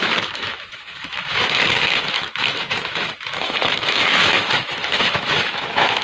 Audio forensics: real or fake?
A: fake